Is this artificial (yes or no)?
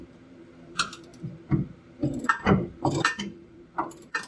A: yes